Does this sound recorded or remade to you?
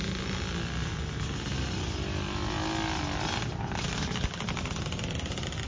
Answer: recorded